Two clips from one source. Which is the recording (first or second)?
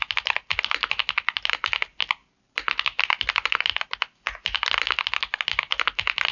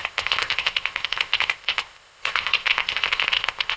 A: first